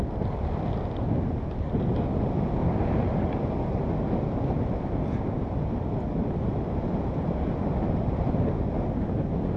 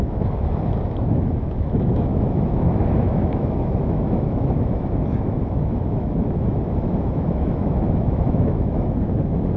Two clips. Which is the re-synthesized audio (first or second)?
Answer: second